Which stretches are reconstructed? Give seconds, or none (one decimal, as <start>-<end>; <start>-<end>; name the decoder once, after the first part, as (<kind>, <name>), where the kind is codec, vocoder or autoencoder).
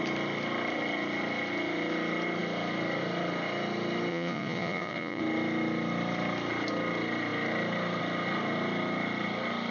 4.1-5.2 (vocoder, Vocos)